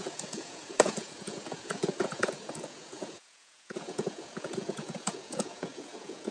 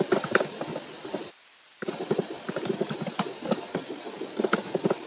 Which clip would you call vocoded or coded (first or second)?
first